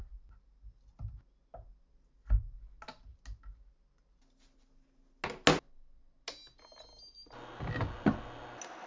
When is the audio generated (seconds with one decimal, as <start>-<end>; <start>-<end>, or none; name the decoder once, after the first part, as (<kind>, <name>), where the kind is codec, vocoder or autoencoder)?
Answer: none